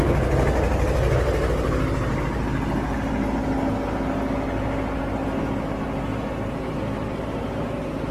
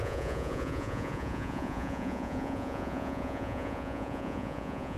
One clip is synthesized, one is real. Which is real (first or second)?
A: first